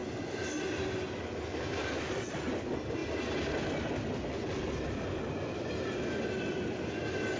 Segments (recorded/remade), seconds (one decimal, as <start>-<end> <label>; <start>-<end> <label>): 0.0-7.4 recorded